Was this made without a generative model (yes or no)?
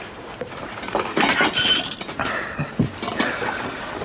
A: yes